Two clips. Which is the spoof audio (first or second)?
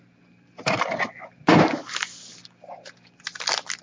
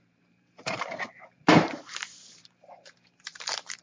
second